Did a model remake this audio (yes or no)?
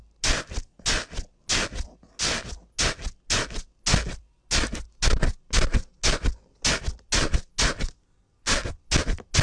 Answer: no